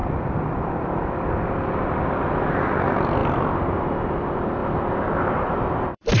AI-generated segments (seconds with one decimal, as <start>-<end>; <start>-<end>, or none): 4.6-6.2